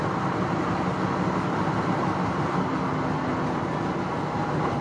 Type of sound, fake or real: real